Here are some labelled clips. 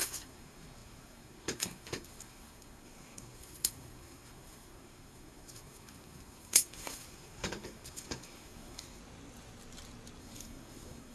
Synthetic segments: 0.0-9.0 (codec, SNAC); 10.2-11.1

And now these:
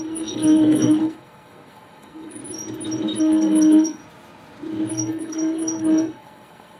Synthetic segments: 0.0-2.4 (codec, SNAC); 3.2-4.0; 4.9-6.8

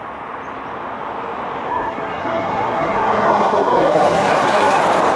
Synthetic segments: 1.7-4.8 (codec, SNAC)

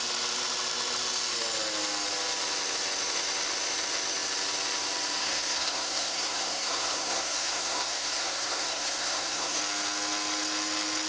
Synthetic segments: 5.2-9.6 (codec, SNAC)

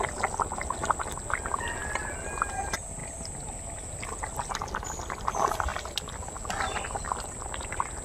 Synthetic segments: none